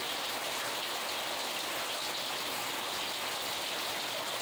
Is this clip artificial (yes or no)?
no